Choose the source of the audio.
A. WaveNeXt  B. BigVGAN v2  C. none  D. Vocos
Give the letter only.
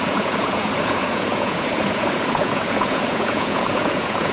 D